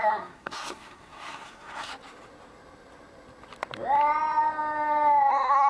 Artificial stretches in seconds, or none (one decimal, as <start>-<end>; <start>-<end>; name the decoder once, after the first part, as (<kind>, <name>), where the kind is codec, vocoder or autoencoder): 0.0-1.9 (codec, SNAC); 5.3-5.7